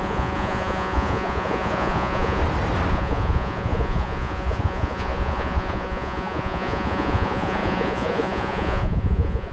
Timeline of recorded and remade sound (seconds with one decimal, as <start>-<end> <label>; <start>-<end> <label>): 0.0-2.4 remade; 2.4-2.9 recorded; 2.9-9.5 remade